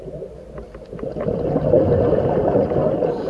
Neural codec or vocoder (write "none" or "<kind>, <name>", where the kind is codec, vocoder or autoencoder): none